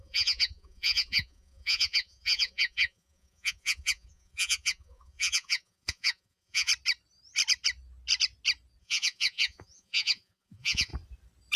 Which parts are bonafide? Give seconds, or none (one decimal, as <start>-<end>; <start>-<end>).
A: 6.7-8.8; 10.9-11.6